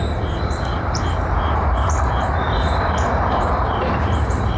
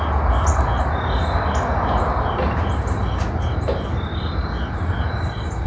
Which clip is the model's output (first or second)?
first